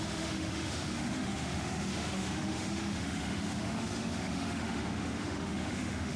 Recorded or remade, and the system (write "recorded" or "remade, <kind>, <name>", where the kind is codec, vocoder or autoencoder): remade, autoencoder, DAC-VAE